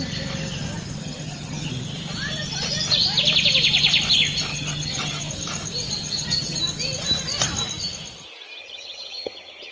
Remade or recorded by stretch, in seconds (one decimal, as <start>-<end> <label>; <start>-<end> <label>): 0.0-1.0 recorded; 1.0-1.7 remade; 1.7-4.5 recorded; 4.5-5.3 remade; 5.3-6.0 recorded; 6.0-6.6 remade; 6.6-8.6 recorded; 8.6-9.7 remade